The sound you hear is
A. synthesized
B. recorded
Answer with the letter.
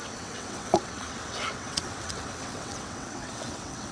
A